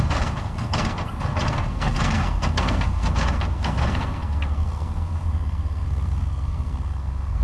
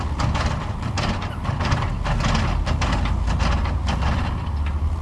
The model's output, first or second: first